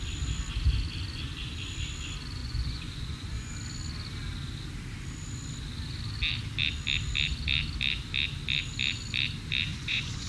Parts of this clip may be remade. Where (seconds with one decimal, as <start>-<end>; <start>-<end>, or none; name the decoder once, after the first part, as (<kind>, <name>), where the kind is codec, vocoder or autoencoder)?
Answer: 2.4-3.5 (vocoder, Vocos); 9.7-10.3